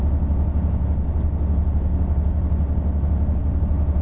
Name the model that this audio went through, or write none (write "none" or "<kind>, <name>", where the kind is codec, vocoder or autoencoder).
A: none